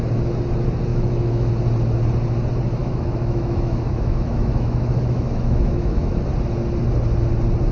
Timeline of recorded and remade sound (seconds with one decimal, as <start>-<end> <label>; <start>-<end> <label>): 0.0-0.9 recorded; 0.9-1.5 remade; 1.5-2.8 recorded; 2.8-6.2 remade; 6.2-7.7 recorded